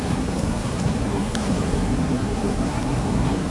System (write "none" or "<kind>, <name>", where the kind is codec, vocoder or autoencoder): codec, SNAC